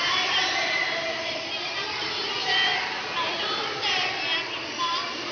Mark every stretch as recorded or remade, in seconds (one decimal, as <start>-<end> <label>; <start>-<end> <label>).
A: 0.0-0.8 remade; 0.8-1.3 recorded; 1.3-2.4 remade; 2.4-3.4 recorded; 3.4-4.0 remade; 4.0-4.8 recorded; 4.8-5.3 remade